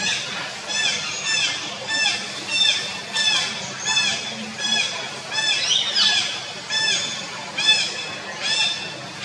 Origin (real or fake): real